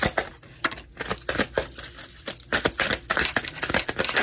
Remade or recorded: recorded